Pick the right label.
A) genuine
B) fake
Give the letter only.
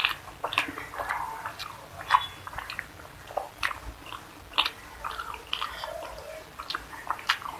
A